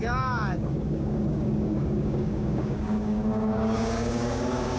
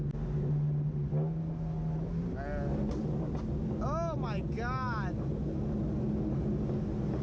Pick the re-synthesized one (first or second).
first